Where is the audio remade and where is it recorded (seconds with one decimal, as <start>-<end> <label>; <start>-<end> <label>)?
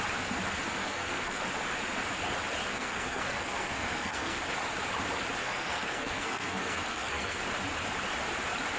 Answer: 0.0-0.8 recorded; 0.8-1.4 remade; 1.4-2.7 recorded; 2.7-4.4 remade; 4.4-5.4 recorded; 5.4-7.4 remade; 7.4-8.8 recorded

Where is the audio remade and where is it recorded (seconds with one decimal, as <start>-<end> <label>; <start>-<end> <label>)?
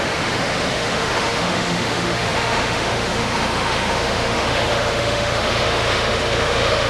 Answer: 0.0-6.9 remade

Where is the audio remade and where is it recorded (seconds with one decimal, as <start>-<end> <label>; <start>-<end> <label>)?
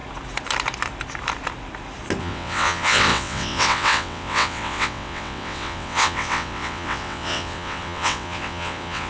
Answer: 0.0-2.2 recorded; 2.2-9.1 remade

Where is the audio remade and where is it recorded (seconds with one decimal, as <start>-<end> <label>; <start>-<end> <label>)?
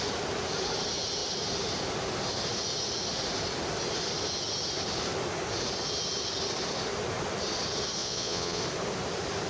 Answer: 0.0-8.0 recorded; 8.0-8.6 remade; 8.6-9.5 recorded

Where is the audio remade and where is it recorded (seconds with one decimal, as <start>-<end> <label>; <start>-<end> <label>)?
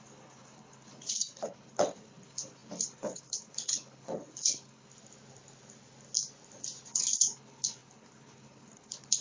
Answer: 0.0-4.9 remade; 4.9-6.9 recorded; 6.9-9.2 remade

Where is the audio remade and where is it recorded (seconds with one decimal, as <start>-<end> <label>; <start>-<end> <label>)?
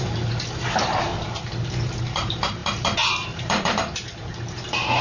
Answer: 0.0-1.1 remade; 1.1-2.0 recorded; 2.0-5.0 remade